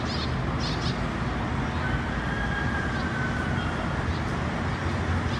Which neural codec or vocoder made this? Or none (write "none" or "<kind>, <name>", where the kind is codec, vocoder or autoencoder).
none